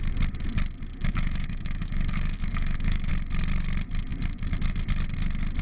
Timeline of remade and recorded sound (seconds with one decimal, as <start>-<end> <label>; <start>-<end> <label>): 0.0-0.9 recorded; 0.9-3.1 remade; 3.1-5.6 recorded